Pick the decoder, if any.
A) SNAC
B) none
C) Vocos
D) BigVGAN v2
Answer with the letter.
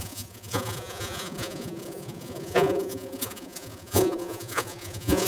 C